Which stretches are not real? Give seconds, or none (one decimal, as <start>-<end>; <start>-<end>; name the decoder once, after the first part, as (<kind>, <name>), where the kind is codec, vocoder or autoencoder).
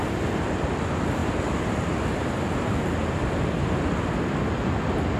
none